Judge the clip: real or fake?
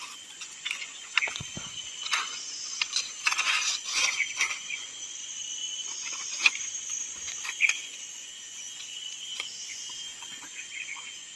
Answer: fake